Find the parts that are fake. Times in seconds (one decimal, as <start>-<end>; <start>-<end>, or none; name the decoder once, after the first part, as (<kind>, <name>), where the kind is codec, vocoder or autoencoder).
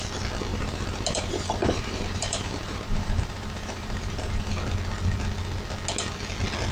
0.5-4.5 (vocoder, BigVGAN v2)